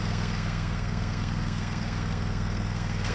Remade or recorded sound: remade